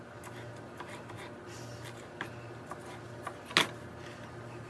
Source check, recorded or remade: recorded